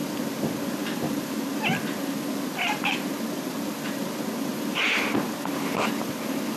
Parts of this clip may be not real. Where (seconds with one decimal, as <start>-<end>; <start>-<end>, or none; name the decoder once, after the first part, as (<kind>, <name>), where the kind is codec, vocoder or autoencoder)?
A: none